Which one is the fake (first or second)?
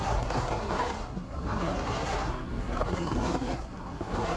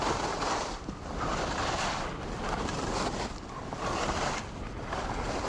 first